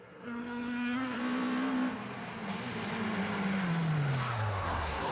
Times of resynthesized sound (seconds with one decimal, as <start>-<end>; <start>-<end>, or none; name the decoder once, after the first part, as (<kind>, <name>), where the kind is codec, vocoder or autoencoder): 0.0-1.2 (codec, SNAC); 4.3-5.1